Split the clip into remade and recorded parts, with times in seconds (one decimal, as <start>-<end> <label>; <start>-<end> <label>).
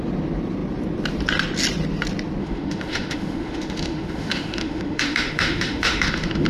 0.0-2.4 recorded; 2.4-6.5 remade